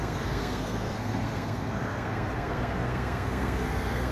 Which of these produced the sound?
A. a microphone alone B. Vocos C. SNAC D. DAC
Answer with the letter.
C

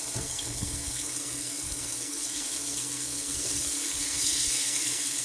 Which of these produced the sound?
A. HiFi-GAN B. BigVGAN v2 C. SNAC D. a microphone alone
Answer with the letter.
C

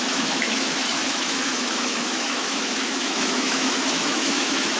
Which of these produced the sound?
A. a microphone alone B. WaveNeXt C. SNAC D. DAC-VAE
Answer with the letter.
D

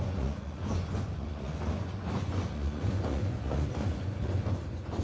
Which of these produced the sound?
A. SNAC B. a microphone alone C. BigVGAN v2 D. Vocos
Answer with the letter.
D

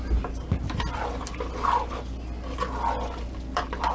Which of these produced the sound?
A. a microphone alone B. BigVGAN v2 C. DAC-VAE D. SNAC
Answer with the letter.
A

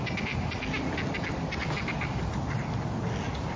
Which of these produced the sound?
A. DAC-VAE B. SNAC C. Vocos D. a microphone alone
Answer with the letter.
D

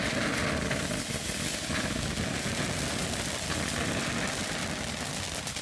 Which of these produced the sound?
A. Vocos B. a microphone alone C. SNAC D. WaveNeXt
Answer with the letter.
B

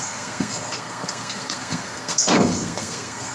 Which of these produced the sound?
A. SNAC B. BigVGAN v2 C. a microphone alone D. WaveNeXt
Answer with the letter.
A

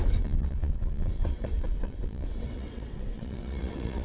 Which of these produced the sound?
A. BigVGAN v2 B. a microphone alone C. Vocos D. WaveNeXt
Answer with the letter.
D